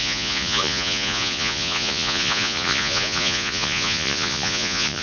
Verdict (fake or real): fake